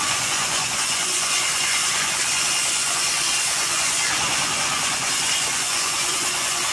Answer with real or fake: fake